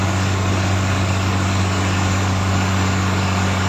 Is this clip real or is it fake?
fake